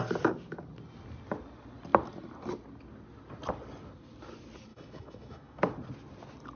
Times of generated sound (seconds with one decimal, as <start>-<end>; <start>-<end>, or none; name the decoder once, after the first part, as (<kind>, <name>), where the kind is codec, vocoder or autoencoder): 4.7-5.6 (autoencoder, DAC-VAE)